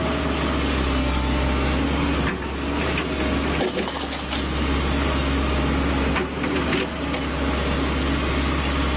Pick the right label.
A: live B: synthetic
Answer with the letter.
A